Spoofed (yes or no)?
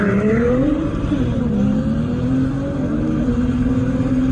yes